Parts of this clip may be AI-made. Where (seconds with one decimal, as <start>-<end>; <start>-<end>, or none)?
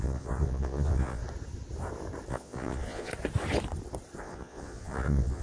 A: 0.0-1.2; 2.3-3.1; 4.2-5.4